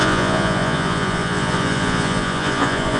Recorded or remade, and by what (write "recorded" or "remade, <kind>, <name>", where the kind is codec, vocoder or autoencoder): remade, vocoder, Vocos